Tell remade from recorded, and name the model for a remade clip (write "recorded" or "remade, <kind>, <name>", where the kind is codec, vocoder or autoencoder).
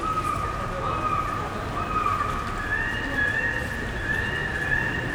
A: recorded